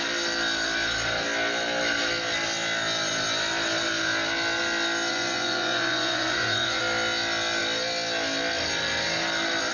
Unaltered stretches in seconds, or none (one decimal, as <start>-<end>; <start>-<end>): 0.0-5.1; 6.8-9.7